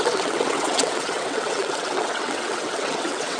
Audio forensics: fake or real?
fake